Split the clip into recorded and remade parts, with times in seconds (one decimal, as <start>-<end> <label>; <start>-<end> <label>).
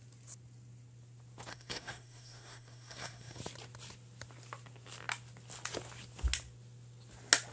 0.0-1.5 recorded; 1.5-3.4 remade; 3.4-7.5 recorded